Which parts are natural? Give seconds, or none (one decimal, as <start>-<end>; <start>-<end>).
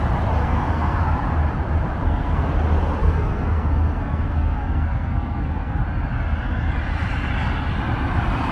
0.0-0.4; 1.0-2.0; 2.5-3.0; 5.8-8.5